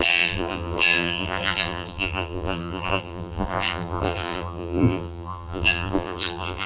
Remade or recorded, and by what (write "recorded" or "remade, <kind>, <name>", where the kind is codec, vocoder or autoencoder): remade, vocoder, BigVGAN v2